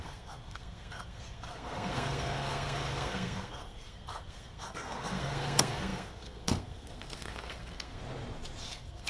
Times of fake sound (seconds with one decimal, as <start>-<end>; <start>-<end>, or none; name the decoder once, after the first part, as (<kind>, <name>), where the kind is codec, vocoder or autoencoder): 0.0-8.0 (codec, SNAC); 8.6-9.1